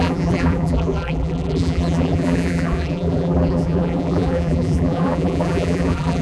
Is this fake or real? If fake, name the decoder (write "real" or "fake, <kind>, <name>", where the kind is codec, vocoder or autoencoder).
fake, vocoder, BigVGAN v2